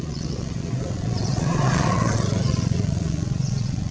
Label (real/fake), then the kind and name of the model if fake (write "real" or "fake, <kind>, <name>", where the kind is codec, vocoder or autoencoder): fake, vocoder, Vocos